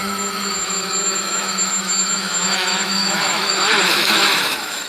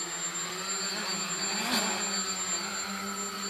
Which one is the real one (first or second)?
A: second